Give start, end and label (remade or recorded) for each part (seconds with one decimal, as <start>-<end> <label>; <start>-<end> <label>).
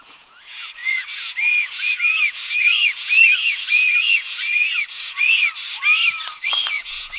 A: 0.0-5.5 remade; 5.5-6.3 recorded; 6.3-7.2 remade